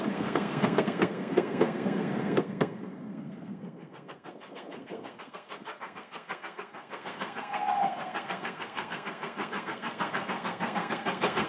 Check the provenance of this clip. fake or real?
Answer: fake